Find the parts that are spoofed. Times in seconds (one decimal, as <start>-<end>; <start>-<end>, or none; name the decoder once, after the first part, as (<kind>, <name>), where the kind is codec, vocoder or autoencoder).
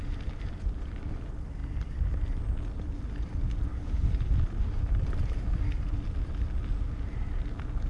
3.7-4.3 (codec, HILCodec)